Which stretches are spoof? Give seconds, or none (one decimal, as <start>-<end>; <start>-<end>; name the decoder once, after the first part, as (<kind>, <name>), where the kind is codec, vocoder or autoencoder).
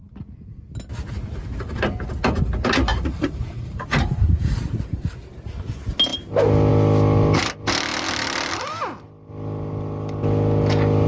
2.9-5.1 (vocoder, Vocos)